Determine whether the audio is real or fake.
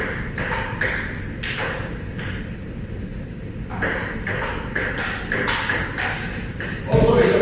real